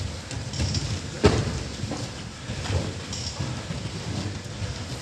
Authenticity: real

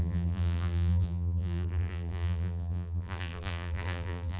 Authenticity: fake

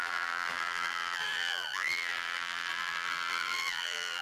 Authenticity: fake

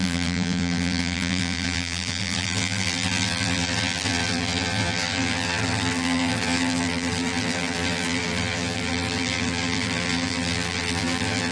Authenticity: fake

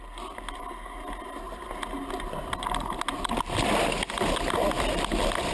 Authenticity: real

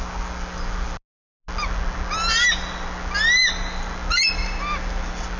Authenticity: real